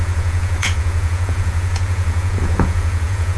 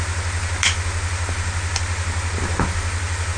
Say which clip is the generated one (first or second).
first